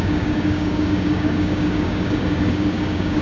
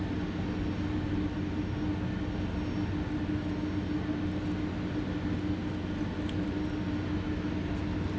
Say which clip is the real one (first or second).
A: second